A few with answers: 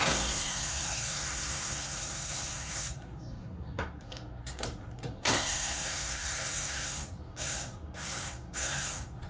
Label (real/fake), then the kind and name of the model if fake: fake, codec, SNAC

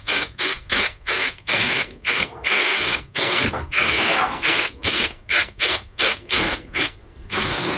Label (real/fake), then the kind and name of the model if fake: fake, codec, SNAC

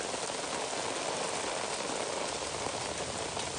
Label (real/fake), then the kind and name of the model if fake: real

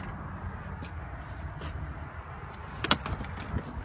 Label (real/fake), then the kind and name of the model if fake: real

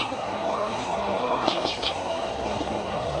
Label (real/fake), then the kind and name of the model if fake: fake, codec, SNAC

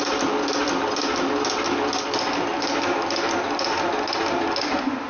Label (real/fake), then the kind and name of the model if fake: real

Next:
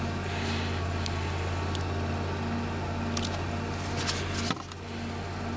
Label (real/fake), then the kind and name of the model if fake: real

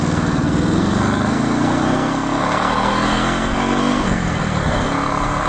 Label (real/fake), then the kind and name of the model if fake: fake, codec, SNAC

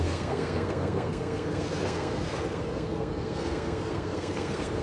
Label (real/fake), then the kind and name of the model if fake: fake, codec, SNAC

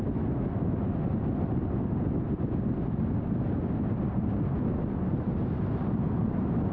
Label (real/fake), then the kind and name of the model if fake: real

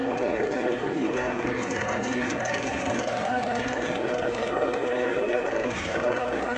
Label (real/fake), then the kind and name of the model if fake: fake, codec, SNAC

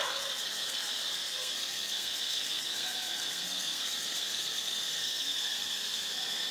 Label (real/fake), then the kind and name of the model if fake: fake, codec, SNAC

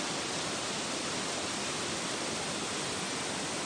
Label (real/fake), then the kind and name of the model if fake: real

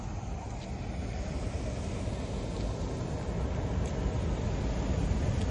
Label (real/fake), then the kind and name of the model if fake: real